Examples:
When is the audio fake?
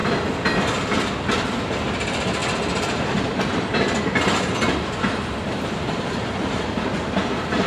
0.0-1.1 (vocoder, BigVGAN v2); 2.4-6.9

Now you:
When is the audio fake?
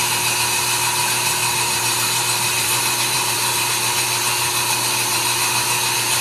1.4-3.7 (vocoder, BigVGAN v2)